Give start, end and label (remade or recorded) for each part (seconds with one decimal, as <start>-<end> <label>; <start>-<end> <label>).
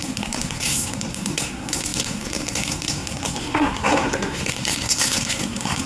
0.0-5.9 remade